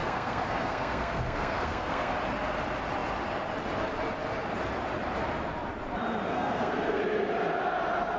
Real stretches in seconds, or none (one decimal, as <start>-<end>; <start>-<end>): 2.1-6.3; 7.0-8.2

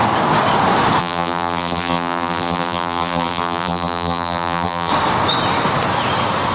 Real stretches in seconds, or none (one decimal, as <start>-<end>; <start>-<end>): 0.0-1.0; 4.9-6.5

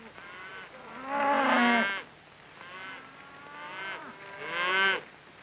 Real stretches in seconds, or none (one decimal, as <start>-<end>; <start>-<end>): 0.0-5.4

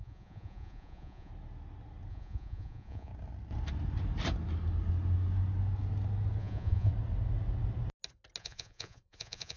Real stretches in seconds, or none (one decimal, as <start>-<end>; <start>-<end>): 1.3-2.1; 3.1-6.4; 6.9-8.4